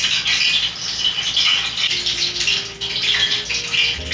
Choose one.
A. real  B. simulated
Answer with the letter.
A